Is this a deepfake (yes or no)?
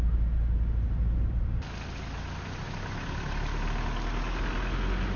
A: no